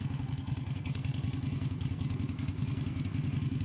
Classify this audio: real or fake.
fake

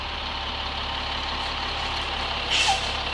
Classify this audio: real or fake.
real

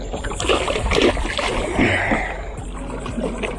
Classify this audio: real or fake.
real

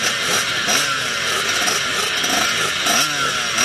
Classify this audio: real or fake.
real